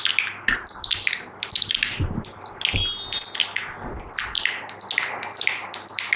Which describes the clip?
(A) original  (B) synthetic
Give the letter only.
A